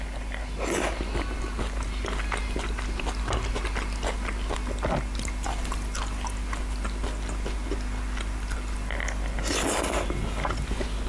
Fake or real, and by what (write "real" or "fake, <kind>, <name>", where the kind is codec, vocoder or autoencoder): real